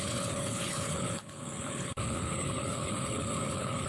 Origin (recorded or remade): remade